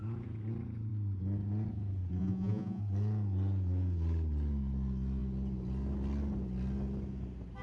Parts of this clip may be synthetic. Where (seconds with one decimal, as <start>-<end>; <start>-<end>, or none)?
2.2-2.8